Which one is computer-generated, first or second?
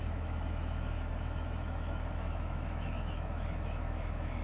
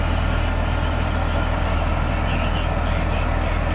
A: first